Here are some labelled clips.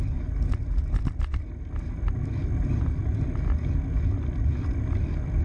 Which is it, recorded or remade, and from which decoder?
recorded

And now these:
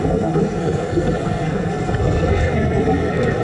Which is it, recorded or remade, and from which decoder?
remade, codec, SNAC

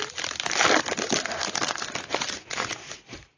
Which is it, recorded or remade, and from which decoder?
remade, vocoder, BigVGAN v2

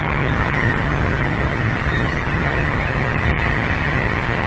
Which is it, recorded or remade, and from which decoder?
remade, vocoder, HiFi-GAN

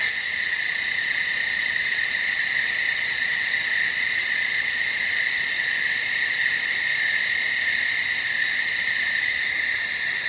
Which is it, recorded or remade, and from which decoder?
recorded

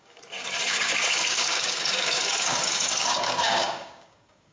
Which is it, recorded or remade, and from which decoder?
remade, codec, DAC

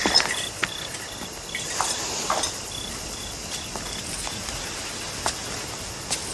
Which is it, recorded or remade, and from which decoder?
recorded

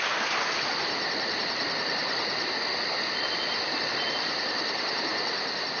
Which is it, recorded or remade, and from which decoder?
recorded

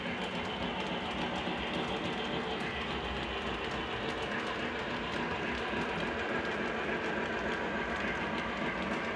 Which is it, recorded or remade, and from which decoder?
recorded